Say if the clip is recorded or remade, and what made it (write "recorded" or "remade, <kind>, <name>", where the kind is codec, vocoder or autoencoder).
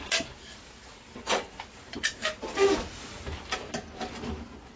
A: recorded